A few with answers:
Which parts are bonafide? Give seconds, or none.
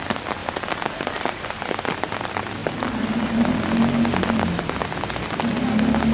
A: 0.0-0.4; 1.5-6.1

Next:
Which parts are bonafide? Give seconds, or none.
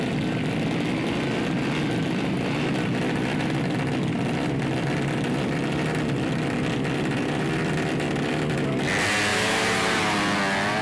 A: 0.0-9.3; 10.0-10.8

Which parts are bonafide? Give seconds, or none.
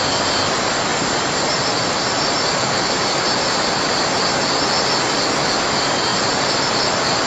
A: 0.0-0.9; 4.0-6.1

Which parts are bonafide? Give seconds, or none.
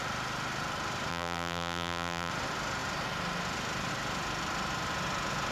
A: 0.0-1.1; 2.3-5.5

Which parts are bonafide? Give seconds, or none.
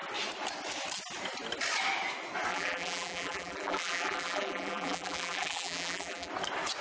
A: 0.0-2.5; 6.3-6.8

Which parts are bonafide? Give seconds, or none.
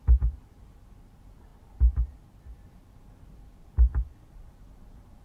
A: 1.5-4.3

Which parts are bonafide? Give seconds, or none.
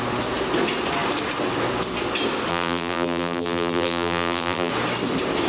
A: 0.0-2.5; 4.7-5.5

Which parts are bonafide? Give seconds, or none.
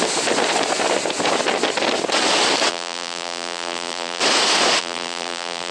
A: 0.0-2.7; 4.2-4.8